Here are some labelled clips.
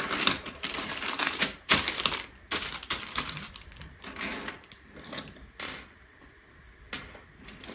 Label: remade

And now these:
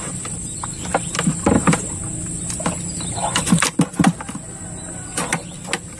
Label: recorded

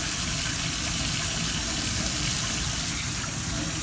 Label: recorded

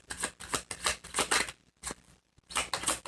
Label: recorded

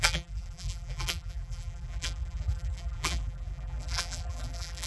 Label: remade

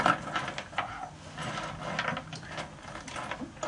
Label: recorded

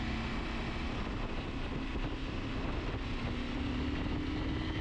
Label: recorded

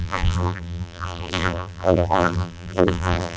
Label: remade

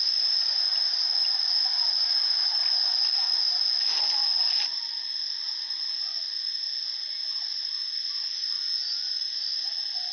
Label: recorded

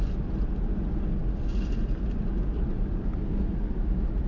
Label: recorded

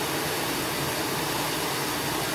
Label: recorded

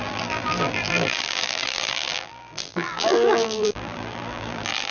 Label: remade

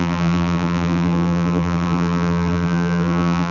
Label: remade